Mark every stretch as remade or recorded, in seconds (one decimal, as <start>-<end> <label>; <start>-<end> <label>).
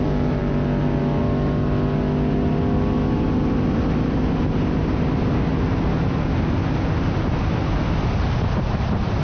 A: 0.0-9.2 recorded